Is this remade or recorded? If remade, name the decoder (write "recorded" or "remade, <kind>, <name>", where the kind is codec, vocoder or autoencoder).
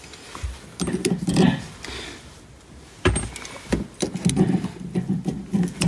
recorded